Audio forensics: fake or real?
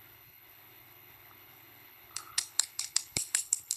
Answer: fake